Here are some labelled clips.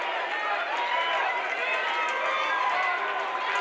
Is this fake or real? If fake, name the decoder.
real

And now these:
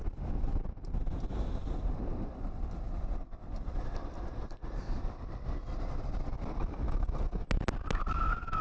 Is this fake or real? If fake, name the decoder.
real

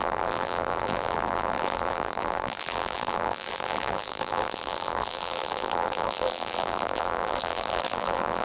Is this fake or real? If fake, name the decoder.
fake, vocoder, BigVGAN v2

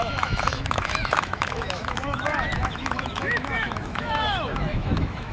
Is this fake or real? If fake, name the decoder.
fake, autoencoder, DAC-VAE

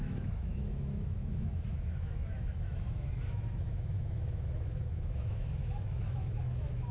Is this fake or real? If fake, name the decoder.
fake, autoencoder, DAC-VAE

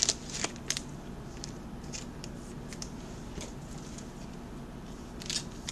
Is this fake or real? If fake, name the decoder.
real